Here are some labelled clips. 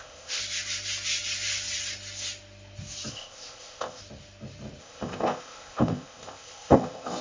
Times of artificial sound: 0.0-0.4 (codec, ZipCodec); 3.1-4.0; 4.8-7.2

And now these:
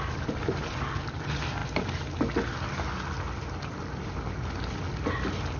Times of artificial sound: none

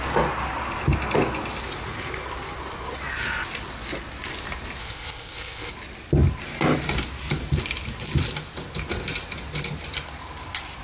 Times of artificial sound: 4.8-5.7 (codec, ZipCodec)

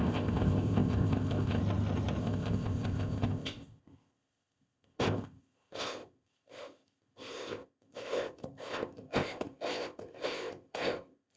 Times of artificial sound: 0.0-1.6 (codec, ZipCodec); 2.2-11.4

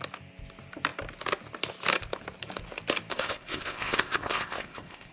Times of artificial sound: 3.1-5.1 (codec, ZipCodec)

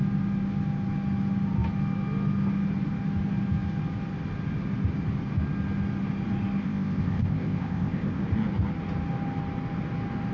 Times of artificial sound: 6.6-8.2 (codec, ZipCodec)

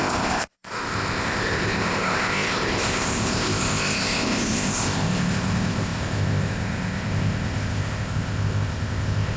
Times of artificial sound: 0.0-9.4 (codec, ZipCodec)